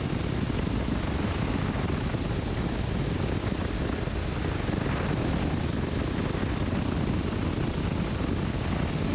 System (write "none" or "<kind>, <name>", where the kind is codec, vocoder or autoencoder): none